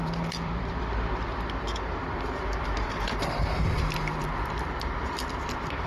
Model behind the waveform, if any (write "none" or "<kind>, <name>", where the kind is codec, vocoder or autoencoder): vocoder, BigVGAN v2